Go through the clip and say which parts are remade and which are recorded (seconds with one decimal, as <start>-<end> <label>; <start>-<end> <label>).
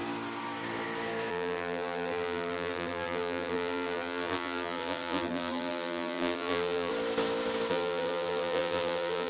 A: 0.0-1.3 recorded; 1.3-6.9 remade; 6.9-7.7 recorded; 7.7-9.3 remade